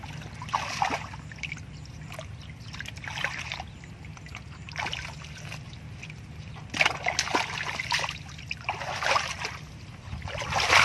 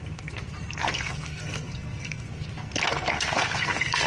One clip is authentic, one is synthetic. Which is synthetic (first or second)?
second